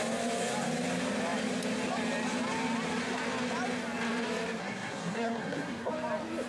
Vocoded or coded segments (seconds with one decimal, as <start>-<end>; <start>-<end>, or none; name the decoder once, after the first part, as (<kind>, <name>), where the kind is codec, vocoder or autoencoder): 4.6-5.9 (codec, SNAC)